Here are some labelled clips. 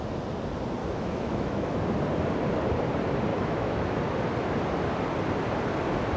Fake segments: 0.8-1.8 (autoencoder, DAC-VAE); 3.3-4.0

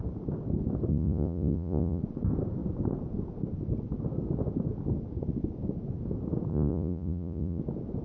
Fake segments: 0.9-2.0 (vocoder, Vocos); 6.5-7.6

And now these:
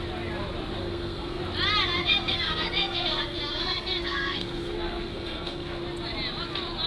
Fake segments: 0.8-1.4 (codec, SNAC); 2.0-5.8

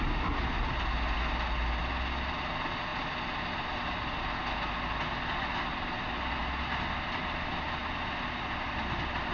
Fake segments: none